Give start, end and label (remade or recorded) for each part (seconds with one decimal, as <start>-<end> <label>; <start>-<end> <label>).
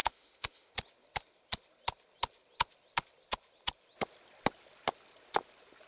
0.0-0.7 remade; 0.7-5.9 recorded